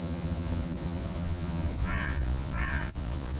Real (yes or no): no